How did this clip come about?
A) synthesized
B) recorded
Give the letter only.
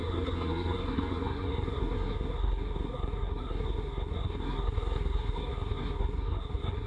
A